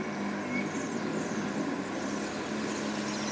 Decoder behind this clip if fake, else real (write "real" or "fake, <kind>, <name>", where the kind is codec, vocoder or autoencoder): real